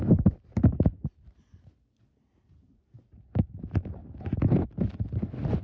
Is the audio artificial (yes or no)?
no